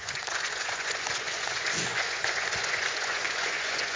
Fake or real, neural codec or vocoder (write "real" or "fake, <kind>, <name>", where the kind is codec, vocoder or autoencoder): fake, vocoder, Vocos